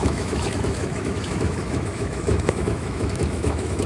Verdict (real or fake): fake